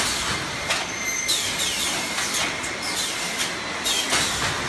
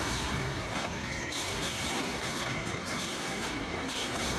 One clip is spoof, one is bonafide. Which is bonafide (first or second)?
first